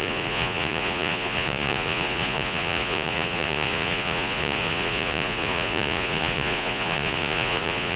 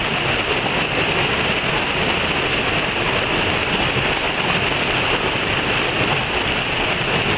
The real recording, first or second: second